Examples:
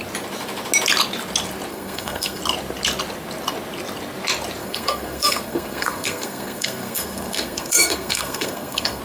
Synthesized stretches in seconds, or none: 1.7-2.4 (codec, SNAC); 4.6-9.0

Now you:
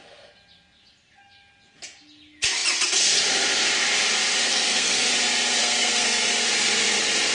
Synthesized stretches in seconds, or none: 4.4-5.1 (codec, SNAC); 5.6-6.3

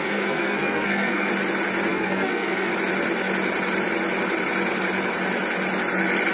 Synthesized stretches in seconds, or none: 0.0-1.3 (codec, SNAC); 1.9-2.7

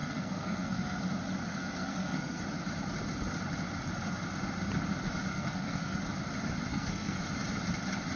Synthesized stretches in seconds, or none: 0.0-1.0 (codec, SNAC); 1.5-2.4; 5.3-6.0; 6.7-7.2

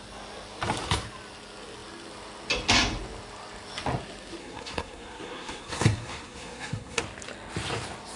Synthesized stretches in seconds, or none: 4.4-7.0 (codec, SNAC)

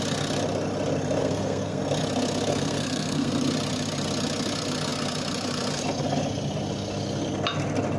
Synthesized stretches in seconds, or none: 1.2-1.8 (codec, SNAC); 2.5-3.3